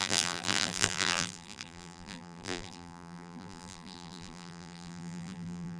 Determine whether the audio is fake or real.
fake